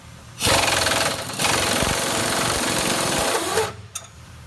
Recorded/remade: remade